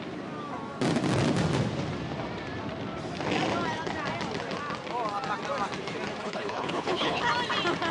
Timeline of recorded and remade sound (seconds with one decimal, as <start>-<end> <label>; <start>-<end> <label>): 0.0-6.2 recorded; 6.2-7.2 remade; 7.2-7.9 recorded